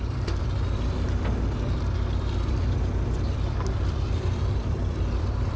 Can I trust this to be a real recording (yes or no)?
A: no